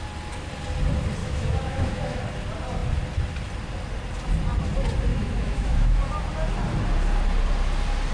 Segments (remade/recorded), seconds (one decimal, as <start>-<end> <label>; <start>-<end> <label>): 0.0-1.2 recorded; 1.2-2.2 remade; 2.2-5.1 recorded; 5.1-6.0 remade; 6.0-8.1 recorded